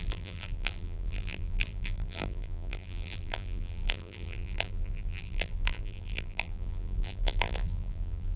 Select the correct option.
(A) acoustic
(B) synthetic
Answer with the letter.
B